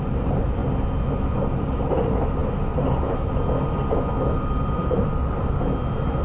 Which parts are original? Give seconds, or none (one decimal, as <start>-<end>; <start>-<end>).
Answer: 0.0-6.2